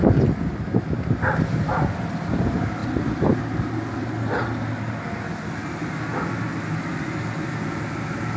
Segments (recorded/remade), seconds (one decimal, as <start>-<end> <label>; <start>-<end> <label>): 0.0-8.4 recorded